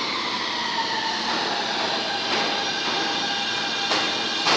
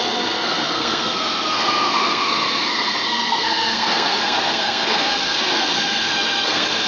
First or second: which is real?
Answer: first